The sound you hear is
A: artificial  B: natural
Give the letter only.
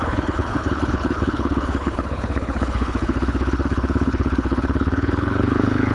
A